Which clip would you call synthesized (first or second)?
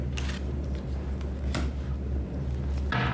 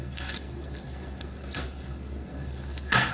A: second